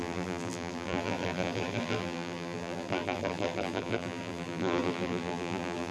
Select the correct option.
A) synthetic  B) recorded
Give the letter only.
A